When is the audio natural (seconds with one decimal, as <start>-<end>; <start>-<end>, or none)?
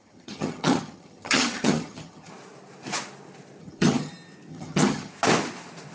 2.3-3.6; 4.1-4.5; 5.1-5.9